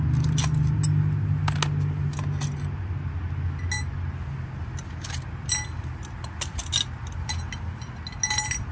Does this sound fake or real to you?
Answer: real